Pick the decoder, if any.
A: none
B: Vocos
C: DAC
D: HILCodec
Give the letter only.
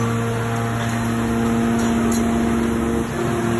A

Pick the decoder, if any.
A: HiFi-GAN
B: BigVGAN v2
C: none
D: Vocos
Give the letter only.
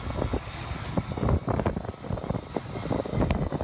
C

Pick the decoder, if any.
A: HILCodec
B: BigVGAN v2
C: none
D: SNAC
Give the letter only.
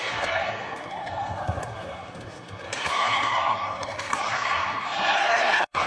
D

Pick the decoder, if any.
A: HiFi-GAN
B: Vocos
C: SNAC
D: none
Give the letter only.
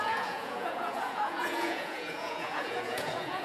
B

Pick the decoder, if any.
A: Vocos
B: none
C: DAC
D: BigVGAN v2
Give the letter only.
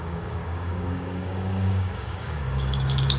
C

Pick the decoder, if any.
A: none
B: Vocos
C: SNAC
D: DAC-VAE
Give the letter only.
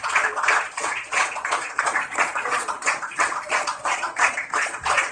B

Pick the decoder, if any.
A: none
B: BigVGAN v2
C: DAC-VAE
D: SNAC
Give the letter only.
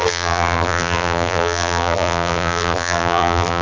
B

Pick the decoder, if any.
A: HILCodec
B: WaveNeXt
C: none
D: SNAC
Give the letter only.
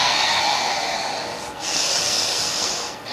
D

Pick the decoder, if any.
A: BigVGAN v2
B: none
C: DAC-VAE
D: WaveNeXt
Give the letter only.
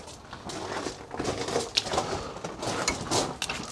B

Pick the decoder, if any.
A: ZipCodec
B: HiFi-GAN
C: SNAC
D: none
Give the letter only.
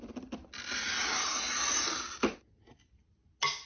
D